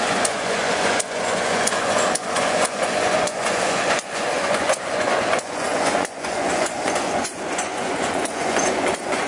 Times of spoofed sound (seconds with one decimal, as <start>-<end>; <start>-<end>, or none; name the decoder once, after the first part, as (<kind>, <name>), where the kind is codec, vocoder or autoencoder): 0.0-9.3 (vocoder, Vocos)

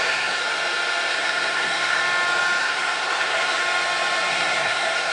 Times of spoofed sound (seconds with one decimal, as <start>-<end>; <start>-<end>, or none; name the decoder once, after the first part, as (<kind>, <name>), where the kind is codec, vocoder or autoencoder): 0.0-0.4 (codec, SNAC); 1.1-2.0; 2.6-3.6; 4.3-5.1

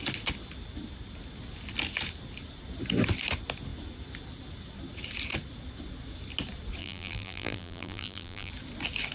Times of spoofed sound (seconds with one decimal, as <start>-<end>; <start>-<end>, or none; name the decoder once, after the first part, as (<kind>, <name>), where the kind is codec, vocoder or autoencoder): 6.8-8.5 (vocoder, BigVGAN v2)